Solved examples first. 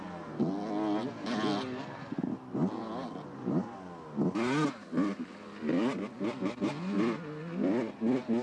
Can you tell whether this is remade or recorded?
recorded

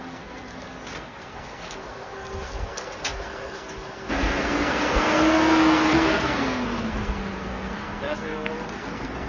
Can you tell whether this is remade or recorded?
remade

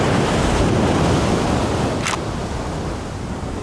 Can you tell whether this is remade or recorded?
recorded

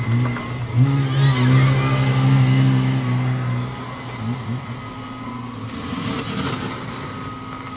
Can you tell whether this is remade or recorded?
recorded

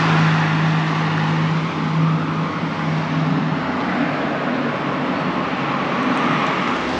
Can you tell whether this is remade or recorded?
recorded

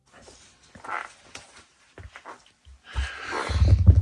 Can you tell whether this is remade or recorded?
recorded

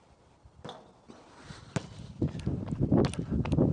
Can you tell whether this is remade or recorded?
recorded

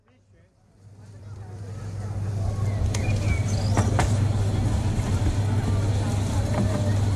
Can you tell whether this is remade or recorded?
recorded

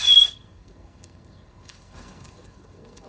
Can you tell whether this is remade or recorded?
remade